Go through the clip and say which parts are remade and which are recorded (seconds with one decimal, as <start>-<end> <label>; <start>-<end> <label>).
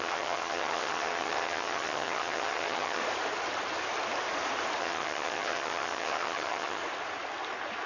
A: 0.0-3.0 remade; 3.0-4.8 recorded; 4.8-6.8 remade; 6.8-7.9 recorded